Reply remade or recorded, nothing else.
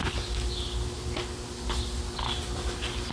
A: recorded